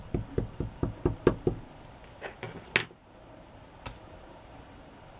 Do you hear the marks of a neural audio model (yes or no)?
no